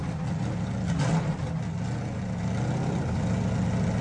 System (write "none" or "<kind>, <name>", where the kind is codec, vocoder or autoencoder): none